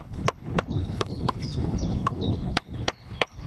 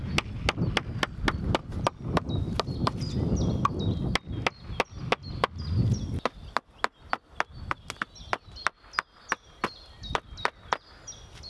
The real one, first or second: second